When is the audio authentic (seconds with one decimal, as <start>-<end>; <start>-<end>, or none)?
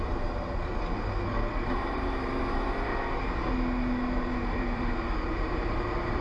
0.7-1.5; 2.9-4.4